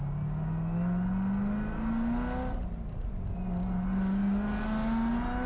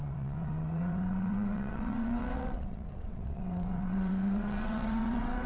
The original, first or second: first